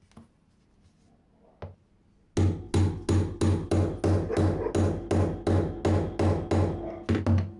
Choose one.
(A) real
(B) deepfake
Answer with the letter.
A